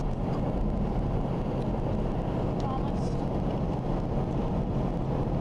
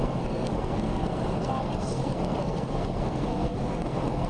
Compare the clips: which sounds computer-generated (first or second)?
second